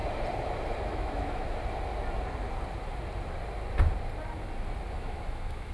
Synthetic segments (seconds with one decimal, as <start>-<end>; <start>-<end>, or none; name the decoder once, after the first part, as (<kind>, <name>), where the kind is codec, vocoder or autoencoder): 0.8-1.6 (autoencoder, DAC-VAE); 5.0-5.7